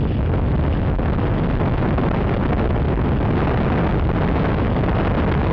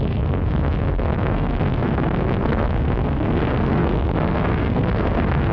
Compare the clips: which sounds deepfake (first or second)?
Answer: second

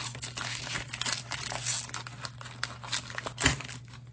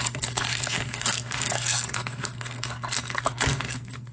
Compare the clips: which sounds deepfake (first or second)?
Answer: second